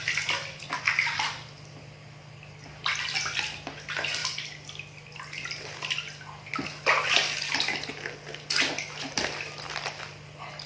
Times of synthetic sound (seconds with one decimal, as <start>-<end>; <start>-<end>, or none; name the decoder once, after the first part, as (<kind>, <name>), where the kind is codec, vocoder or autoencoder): none